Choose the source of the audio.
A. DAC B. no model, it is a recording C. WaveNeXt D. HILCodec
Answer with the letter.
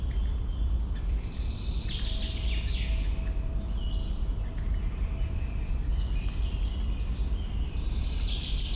B